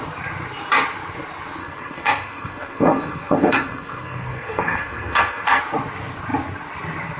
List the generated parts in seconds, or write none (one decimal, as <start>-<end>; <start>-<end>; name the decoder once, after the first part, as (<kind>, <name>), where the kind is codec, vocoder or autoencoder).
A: 1.6-5.6 (codec, SNAC)